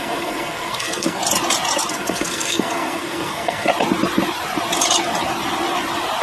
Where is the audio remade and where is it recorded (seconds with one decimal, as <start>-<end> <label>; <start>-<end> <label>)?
0.0-1.2 remade; 1.2-1.9 recorded; 1.9-3.7 remade; 3.7-6.2 recorded